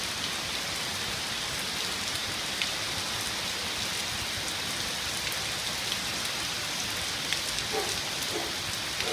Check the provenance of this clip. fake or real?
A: real